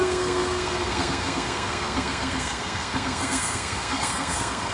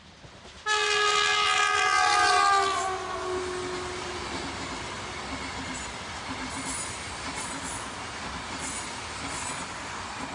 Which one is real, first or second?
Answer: second